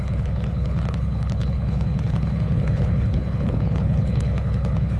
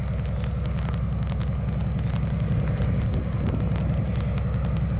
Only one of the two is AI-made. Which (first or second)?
first